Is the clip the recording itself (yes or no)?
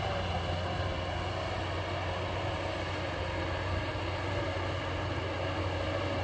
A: yes